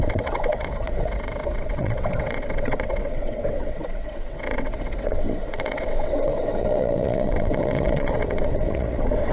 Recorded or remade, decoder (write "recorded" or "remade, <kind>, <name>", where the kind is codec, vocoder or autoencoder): remade, vocoder, WaveNeXt